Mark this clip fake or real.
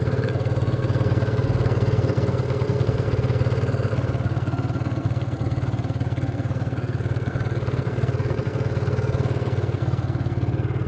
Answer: fake